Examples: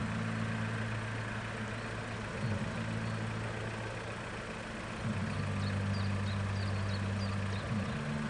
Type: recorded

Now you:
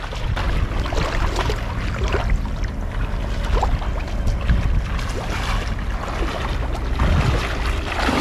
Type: recorded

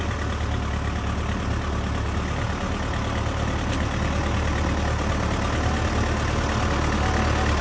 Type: recorded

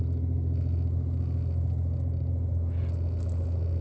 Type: recorded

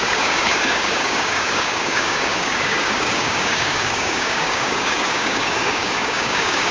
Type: remade